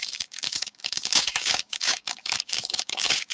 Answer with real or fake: fake